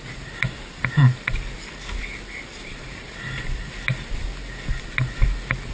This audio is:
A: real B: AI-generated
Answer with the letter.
A